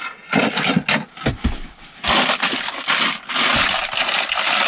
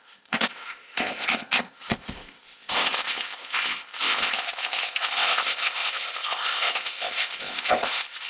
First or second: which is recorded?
first